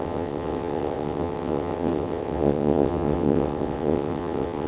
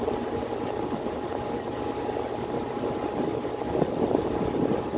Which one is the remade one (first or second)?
first